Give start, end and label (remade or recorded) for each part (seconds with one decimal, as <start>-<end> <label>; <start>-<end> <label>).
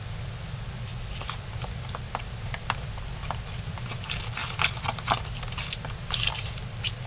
0.0-0.9 recorded; 0.9-3.9 remade; 3.9-4.4 recorded; 4.4-7.1 remade